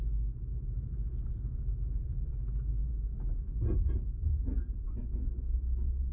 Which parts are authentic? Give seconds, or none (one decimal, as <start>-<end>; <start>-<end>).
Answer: 0.0-0.5; 2.3-2.8; 4.8-6.1